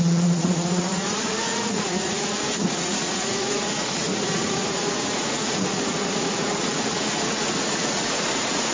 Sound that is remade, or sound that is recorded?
remade